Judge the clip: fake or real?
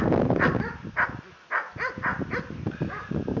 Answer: real